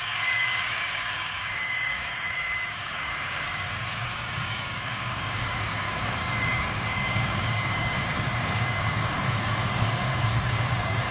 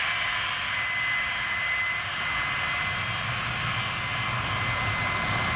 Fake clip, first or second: first